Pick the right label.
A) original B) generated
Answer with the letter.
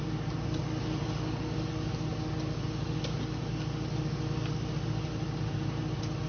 A